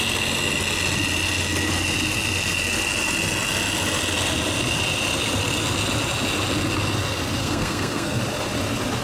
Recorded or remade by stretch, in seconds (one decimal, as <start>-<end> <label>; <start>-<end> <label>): 0.0-7.4 recorded; 7.4-8.2 remade; 8.2-9.0 recorded